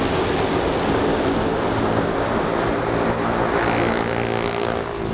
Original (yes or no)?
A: yes